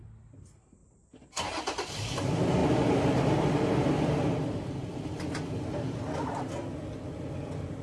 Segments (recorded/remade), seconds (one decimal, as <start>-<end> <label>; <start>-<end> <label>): 0.0-0.8 recorded; 0.8-1.6 remade; 1.6-7.8 recorded